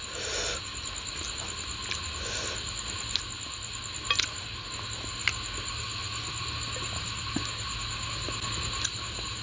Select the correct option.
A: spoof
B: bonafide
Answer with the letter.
B